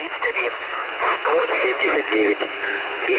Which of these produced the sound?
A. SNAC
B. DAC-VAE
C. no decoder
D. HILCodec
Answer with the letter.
D